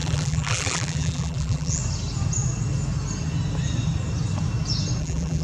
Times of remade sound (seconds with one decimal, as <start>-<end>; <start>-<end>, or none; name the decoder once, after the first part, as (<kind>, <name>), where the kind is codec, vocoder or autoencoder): 0.0-1.8 (vocoder, BigVGAN v2); 5.0-5.4